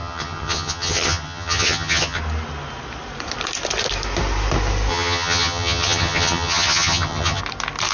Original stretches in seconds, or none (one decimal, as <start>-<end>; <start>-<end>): 2.2-4.9; 7.4-7.9